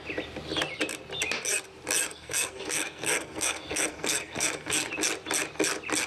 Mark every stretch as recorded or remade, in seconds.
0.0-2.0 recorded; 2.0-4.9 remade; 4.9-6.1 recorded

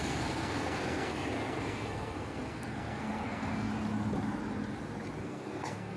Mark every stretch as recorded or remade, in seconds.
0.0-3.7 remade; 3.7-5.2 recorded; 5.2-6.0 remade

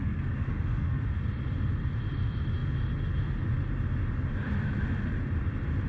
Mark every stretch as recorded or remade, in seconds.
0.0-1.2 remade; 1.2-5.9 recorded

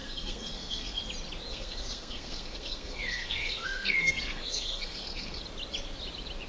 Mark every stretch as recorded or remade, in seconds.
0.0-1.0 remade; 1.0-1.5 recorded; 1.5-5.4 remade; 5.4-6.5 recorded

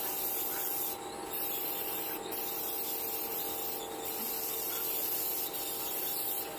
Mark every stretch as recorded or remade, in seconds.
0.0-6.6 recorded